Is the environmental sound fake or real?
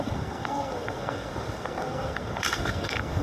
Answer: fake